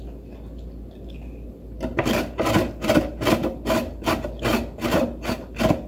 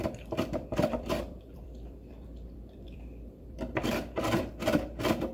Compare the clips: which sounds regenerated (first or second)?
second